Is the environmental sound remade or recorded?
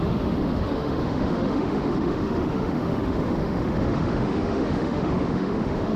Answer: remade